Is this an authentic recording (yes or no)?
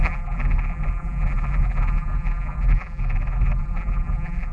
no